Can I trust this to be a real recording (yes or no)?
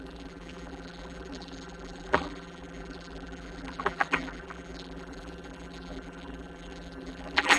no